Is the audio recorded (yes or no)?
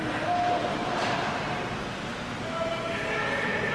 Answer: yes